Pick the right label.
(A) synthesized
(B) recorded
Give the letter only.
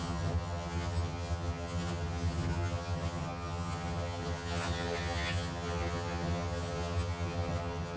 A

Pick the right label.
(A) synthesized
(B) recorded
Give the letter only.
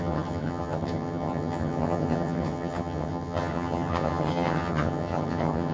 A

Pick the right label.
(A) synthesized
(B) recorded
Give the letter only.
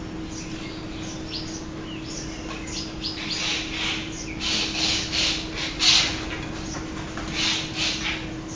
B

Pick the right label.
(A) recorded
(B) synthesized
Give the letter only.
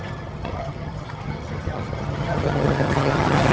B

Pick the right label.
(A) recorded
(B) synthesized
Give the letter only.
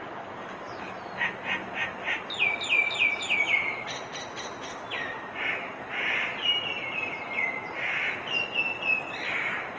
A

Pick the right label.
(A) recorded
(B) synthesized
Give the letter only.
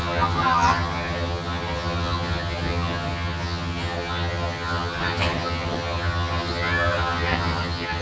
B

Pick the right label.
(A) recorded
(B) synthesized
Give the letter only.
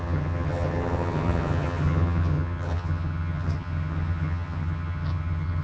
B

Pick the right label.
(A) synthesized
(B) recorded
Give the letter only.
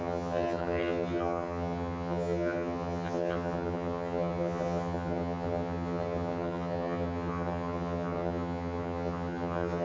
A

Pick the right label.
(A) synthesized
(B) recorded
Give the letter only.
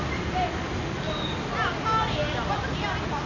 B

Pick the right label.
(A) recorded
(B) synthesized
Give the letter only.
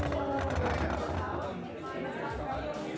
A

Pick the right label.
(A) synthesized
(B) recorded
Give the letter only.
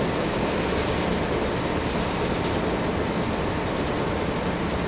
B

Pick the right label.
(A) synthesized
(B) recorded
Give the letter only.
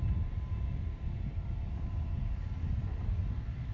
B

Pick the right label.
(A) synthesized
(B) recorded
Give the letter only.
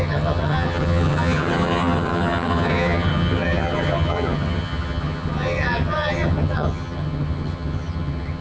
A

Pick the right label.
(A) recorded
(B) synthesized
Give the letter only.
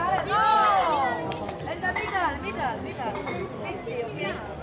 A